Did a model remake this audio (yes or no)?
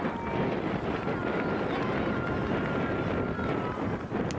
no